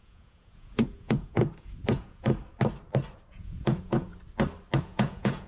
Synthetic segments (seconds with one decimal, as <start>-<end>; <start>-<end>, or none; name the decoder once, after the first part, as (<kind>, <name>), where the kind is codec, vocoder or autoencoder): 0.0-2.4 (vocoder, Vocos); 3.3-4.1; 4.8-5.5